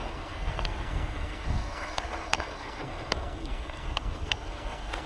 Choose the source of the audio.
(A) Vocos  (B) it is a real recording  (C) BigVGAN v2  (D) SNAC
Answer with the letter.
D